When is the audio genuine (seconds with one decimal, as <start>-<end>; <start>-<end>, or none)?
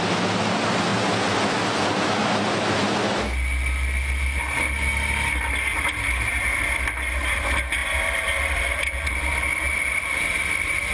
0.0-10.9